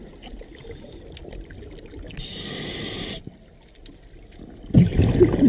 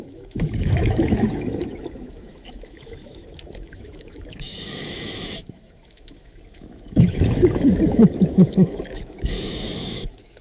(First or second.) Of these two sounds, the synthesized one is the second